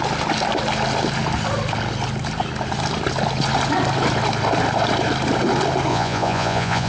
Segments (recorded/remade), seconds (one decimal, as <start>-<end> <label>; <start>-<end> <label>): 0.0-5.9 recorded; 5.9-6.9 remade